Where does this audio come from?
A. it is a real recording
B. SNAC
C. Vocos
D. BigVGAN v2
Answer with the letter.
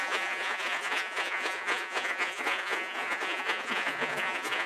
C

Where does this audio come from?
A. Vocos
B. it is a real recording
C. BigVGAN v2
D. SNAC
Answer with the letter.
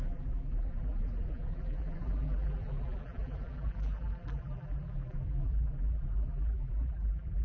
C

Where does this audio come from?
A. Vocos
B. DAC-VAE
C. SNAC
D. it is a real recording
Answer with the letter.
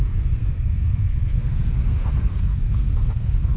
C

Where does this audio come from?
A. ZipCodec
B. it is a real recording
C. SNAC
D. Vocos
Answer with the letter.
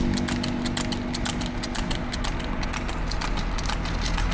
B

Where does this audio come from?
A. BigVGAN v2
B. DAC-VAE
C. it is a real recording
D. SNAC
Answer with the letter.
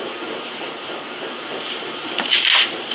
A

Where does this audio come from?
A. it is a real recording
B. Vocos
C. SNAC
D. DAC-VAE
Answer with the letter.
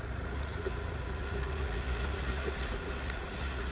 B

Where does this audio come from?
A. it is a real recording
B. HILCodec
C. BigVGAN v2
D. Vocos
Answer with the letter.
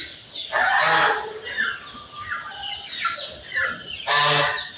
A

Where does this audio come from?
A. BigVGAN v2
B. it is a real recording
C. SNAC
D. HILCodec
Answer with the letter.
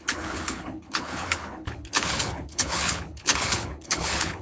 D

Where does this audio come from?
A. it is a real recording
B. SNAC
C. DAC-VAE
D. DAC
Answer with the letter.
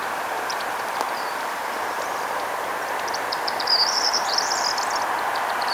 A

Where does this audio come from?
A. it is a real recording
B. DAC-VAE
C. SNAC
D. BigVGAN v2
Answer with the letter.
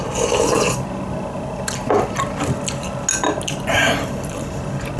A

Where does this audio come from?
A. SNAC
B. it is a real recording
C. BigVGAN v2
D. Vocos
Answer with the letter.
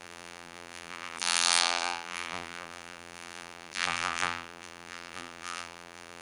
C